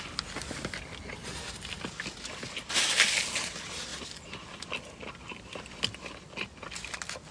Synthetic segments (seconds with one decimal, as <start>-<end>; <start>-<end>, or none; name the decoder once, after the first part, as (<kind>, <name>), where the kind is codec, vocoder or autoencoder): none